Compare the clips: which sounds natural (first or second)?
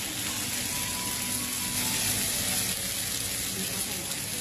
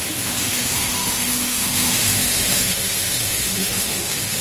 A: first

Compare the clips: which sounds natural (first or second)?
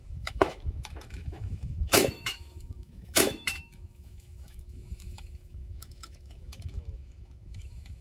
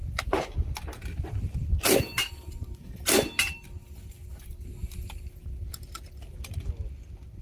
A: second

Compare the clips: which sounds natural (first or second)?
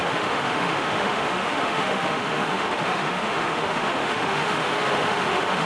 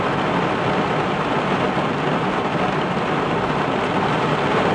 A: second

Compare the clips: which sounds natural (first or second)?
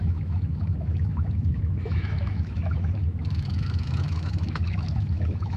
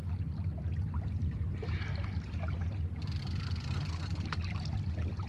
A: second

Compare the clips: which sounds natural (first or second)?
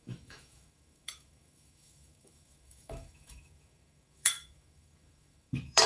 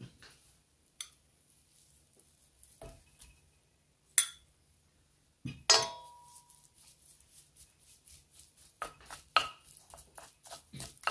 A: second